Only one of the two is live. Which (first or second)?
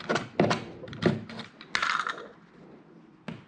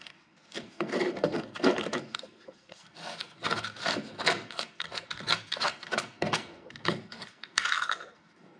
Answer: first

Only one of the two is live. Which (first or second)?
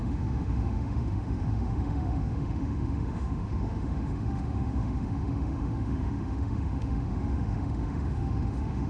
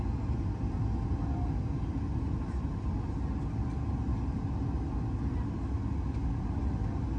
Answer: second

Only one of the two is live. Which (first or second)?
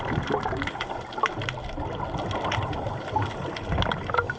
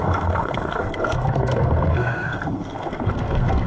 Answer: first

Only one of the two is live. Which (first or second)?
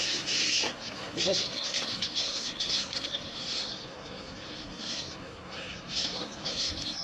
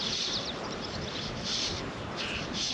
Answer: second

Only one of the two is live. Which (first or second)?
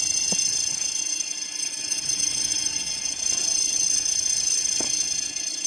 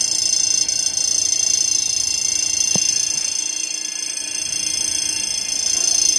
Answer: second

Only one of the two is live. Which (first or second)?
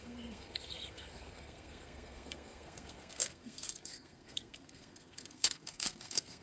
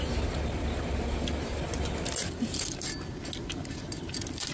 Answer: second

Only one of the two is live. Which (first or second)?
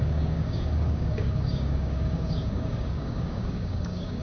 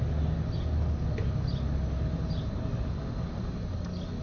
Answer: second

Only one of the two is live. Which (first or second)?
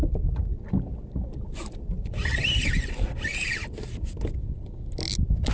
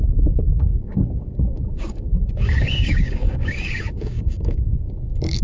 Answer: first